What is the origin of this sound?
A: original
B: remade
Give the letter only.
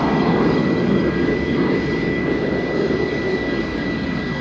B